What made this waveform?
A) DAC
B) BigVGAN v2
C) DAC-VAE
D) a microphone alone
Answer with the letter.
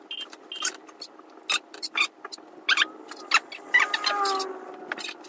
D